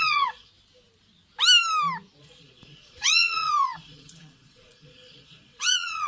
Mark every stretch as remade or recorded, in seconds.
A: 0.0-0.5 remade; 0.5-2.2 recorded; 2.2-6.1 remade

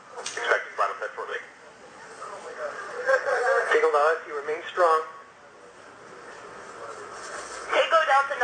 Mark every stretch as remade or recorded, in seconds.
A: 0.0-1.3 recorded; 1.3-3.4 remade; 3.4-8.4 recorded

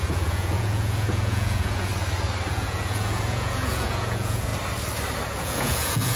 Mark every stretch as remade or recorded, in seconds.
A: 0.0-1.9 remade; 1.9-2.5 recorded; 2.5-4.5 remade; 4.5-5.3 recorded; 5.3-6.2 remade

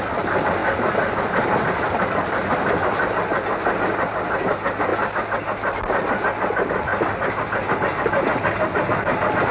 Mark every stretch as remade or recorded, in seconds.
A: 0.0-9.5 recorded

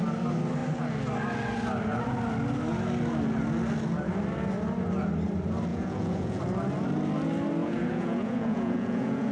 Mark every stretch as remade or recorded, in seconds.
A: 0.0-5.7 recorded; 5.7-6.4 remade; 6.4-7.6 recorded; 7.6-9.3 remade